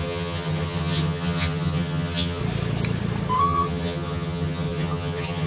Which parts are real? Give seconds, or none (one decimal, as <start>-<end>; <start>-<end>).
2.4-3.4

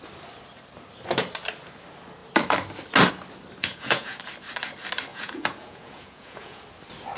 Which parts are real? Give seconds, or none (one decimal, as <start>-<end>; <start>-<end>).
0.0-3.6; 4.2-5.1; 6.6-7.2

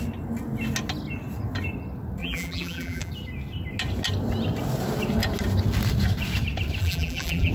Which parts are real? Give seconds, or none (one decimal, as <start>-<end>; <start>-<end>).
0.0-2.2; 3.1-6.8